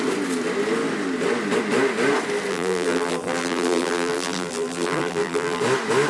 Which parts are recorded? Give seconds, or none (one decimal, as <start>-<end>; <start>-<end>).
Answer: 0.0-2.5; 5.6-6.1